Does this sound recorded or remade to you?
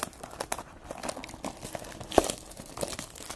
recorded